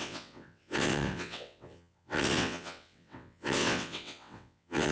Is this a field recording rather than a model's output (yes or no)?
no